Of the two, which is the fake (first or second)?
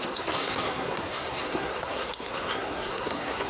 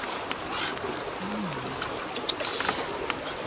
first